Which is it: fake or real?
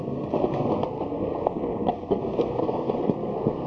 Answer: fake